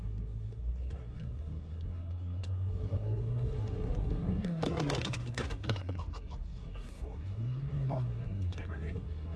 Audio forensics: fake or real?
fake